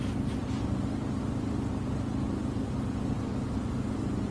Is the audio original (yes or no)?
yes